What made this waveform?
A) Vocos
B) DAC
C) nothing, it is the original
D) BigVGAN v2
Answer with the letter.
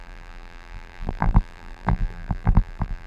D